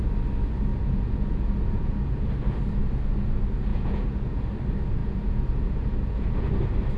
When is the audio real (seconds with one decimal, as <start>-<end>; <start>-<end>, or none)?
0.0-0.7; 2.3-3.7; 4.4-5.0; 6.5-7.0